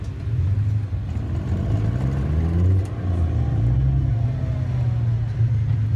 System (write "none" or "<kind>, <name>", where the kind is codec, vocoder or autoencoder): none